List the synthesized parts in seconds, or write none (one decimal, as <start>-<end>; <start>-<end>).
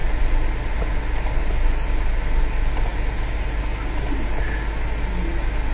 none